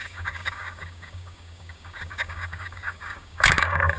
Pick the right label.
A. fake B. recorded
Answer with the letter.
A